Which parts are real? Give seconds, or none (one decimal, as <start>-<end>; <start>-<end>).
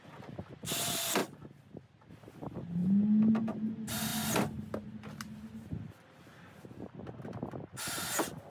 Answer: 0.0-8.5